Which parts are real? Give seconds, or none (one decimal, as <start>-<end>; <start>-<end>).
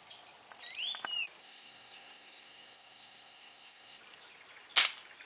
0.0-1.4; 4.0-5.3